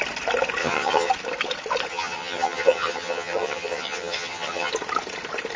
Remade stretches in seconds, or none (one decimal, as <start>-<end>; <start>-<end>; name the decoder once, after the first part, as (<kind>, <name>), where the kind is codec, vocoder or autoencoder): 0.6-1.1 (vocoder, HiFi-GAN); 1.9-4.7

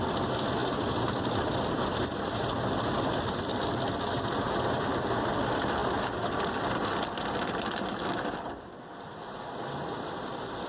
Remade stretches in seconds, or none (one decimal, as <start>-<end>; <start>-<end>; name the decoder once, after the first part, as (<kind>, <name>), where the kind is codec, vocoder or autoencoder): none

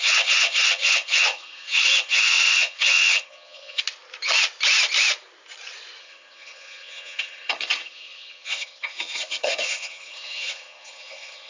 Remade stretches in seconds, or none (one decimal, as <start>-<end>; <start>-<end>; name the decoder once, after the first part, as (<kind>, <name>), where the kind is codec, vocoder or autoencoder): 0.0-3.8 (vocoder, HiFi-GAN); 6.0-11.5

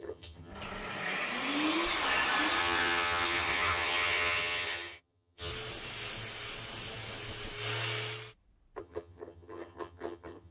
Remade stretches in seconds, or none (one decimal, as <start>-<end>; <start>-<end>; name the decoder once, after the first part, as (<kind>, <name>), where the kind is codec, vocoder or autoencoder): 0.0-0.5 (vocoder, HiFi-GAN); 2.6-5.5; 8.8-10.5

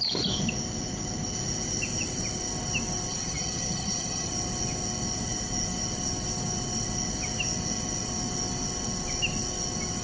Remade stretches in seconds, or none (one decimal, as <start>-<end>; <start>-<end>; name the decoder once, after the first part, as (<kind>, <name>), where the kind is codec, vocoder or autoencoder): 3.1-4.3 (vocoder, HiFi-GAN)

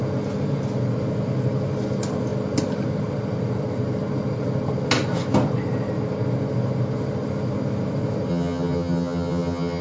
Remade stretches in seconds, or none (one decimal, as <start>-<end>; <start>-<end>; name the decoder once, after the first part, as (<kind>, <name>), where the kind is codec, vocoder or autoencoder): 8.3-9.8 (vocoder, HiFi-GAN)

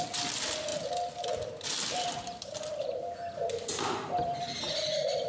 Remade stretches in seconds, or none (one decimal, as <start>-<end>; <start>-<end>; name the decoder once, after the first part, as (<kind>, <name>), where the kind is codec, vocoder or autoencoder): none